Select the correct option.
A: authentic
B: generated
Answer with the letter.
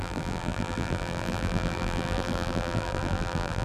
B